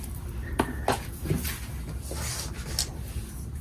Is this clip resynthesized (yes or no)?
no